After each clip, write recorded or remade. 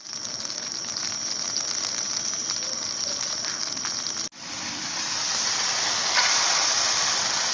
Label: recorded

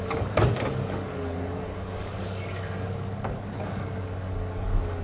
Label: remade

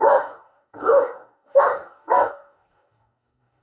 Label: remade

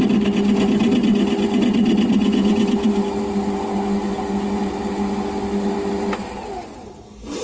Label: recorded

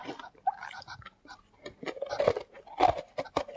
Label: recorded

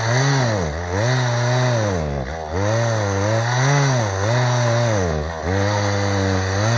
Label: recorded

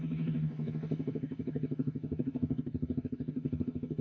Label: remade